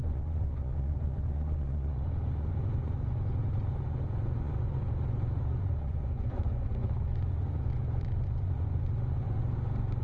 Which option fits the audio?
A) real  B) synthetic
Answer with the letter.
B